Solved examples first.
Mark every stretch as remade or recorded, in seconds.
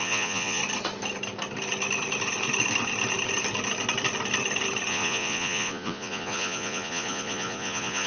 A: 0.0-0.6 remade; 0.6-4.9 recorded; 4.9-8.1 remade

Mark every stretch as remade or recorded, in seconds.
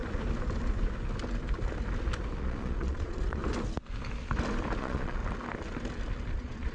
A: 0.0-2.4 recorded; 2.4-3.4 remade; 3.4-4.8 recorded; 4.8-5.2 remade; 5.2-6.3 recorded; 6.3-6.7 remade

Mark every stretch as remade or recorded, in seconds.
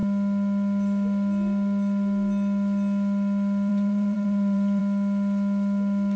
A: 0.0-3.7 recorded; 3.7-4.8 remade; 4.8-6.2 recorded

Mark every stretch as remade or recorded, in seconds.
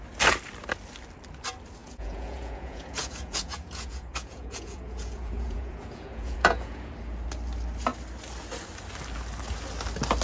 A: 0.0-1.8 recorded; 1.8-6.9 remade; 6.9-10.2 recorded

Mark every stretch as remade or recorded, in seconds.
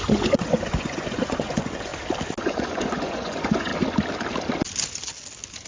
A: 0.0-1.9 remade; 1.9-2.5 recorded; 2.5-3.7 remade; 3.7-5.7 recorded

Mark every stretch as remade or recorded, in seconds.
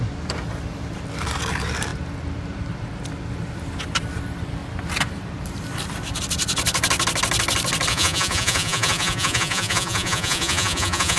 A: 0.0-7.9 recorded; 7.9-11.2 remade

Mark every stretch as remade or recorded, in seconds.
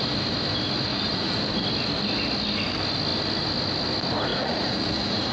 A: 0.0-0.9 recorded; 0.9-1.4 remade; 1.4-4.3 recorded; 4.3-5.3 remade